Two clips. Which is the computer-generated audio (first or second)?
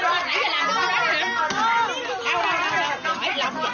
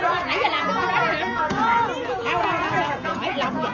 second